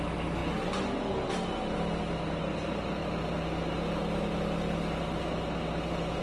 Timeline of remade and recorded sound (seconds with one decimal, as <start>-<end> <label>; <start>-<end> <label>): 0.0-6.2 recorded